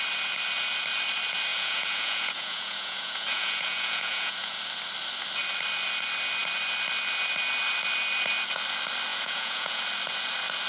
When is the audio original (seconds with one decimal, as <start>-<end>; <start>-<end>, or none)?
0.0-1.5; 4.6-9.1; 9.8-10.7